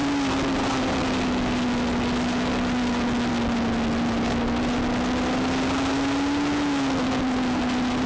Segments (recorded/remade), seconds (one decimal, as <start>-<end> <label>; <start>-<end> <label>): 0.0-8.1 recorded